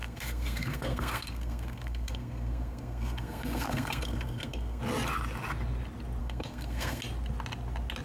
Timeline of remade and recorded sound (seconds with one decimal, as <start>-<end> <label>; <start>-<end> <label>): 0.0-4.8 remade; 4.8-6.2 recorded; 6.2-7.0 remade; 7.0-8.0 recorded